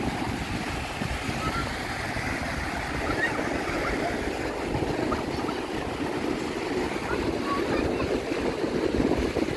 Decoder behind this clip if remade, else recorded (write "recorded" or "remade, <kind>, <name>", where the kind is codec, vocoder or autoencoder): recorded